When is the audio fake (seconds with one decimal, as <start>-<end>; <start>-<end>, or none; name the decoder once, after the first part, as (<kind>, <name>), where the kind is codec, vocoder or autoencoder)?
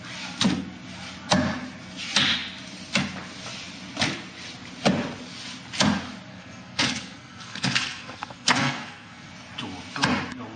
6.3-9.3 (codec, SNAC)